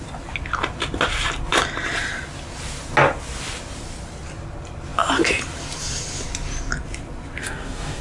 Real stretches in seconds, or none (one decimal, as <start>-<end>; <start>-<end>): 0.0-7.4